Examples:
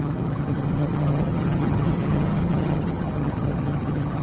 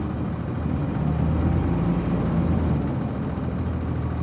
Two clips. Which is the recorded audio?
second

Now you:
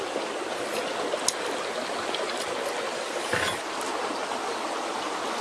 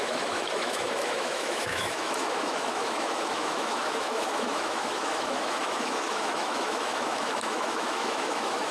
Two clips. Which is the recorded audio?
first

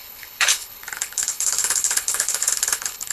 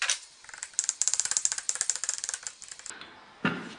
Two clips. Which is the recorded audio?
second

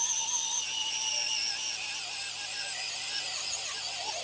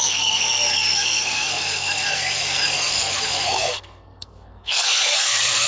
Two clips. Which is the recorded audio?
first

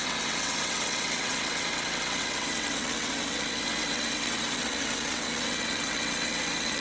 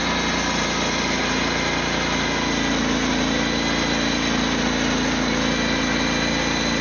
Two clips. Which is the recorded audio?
second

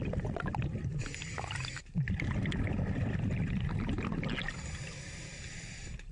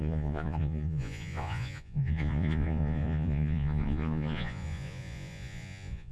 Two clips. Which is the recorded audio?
first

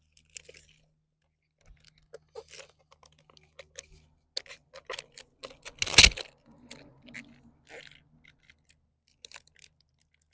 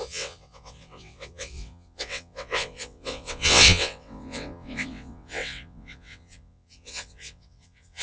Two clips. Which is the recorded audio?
first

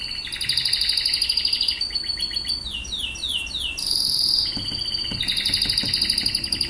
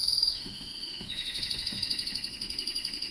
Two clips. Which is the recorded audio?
first